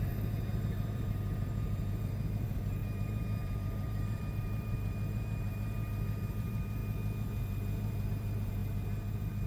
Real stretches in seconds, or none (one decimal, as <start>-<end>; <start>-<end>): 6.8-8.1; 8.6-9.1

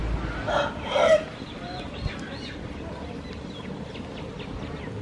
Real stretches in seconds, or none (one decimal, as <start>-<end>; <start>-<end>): 0.0-5.0

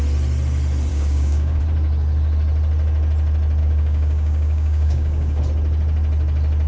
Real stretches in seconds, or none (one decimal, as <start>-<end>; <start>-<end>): 0.0-0.9; 1.6-3.6; 5.4-6.7

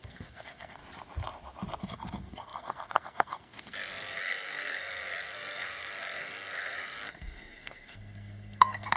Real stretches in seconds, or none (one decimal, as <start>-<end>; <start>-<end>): 0.8-1.8

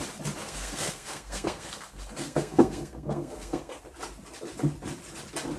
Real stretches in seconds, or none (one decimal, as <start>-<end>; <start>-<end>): 0.0-0.4; 3.8-5.6

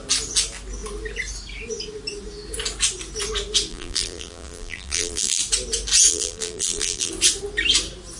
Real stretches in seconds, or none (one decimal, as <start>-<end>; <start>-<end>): 0.0-3.7; 5.4-6.1; 7.1-8.2